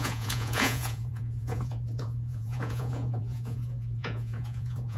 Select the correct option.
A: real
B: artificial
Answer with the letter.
B